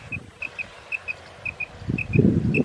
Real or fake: real